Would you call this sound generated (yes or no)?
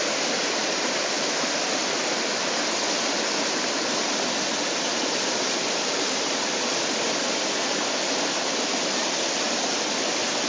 no